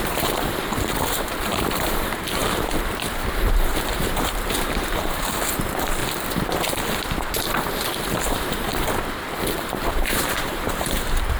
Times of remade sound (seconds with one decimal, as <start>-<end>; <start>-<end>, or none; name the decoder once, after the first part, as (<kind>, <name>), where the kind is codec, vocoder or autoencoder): 0.0-6.0 (vocoder, BigVGAN v2); 8.0-8.7; 9.5-11.4